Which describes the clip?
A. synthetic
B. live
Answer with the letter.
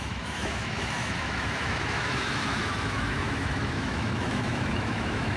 A